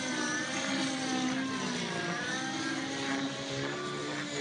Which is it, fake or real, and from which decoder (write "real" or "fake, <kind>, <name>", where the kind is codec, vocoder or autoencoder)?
real